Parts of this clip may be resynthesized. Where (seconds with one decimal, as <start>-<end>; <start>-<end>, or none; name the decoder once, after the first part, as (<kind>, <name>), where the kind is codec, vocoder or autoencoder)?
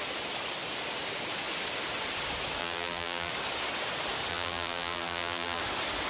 2.6-3.3 (vocoder, BigVGAN v2); 4.3-5.6